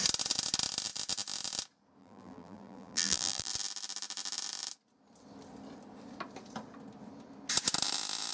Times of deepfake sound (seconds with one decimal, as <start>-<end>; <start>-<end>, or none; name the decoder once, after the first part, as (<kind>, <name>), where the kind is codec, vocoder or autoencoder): 2.0-3.5 (vocoder, BigVGAN v2)